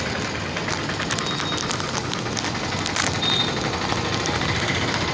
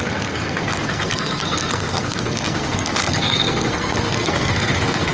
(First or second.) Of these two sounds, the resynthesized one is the second